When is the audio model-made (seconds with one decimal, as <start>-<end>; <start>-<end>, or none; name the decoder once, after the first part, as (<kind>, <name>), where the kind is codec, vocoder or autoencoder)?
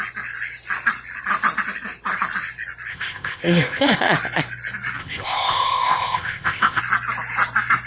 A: 2.9-4.0 (codec, ZipCodec); 5.0-6.8